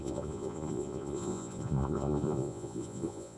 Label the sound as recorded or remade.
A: remade